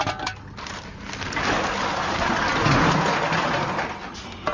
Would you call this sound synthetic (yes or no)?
no